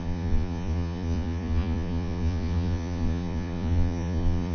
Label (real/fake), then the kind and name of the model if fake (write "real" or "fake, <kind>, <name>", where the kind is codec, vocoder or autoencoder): fake, vocoder, Vocos